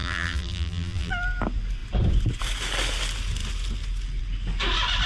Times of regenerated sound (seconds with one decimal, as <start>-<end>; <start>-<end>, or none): 0.0-1.1